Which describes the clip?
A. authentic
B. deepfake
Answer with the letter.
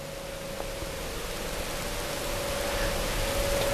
A